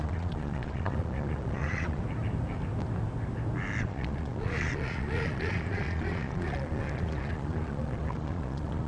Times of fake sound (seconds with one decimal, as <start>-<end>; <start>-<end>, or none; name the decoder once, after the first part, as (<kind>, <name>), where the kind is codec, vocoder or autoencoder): 0.0-2.0 (vocoder, Vocos); 3.8-8.9